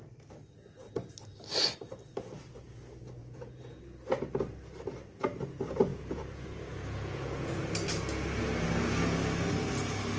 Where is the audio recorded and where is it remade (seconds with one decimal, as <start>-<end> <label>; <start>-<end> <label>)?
0.0-3.2 recorded; 3.2-3.8 remade; 3.8-5.9 recorded; 5.9-7.6 remade; 7.6-10.2 recorded